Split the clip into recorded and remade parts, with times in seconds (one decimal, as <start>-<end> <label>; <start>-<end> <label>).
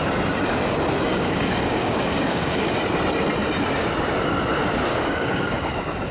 0.0-1.1 recorded; 1.1-2.7 remade; 2.7-4.9 recorded; 4.9-6.1 remade